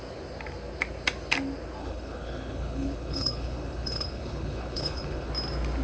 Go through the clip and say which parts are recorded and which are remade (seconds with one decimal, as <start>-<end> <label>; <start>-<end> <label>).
0.0-1.8 recorded; 1.8-5.3 remade; 5.3-5.8 recorded